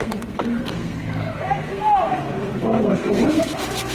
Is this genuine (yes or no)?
no